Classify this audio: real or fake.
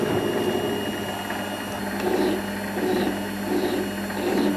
real